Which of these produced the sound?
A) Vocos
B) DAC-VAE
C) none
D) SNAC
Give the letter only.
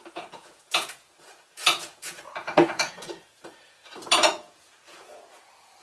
A